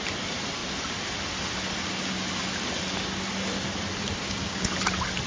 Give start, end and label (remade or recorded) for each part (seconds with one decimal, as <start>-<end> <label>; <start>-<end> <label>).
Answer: 0.0-4.2 recorded; 4.2-4.7 remade; 4.7-5.3 recorded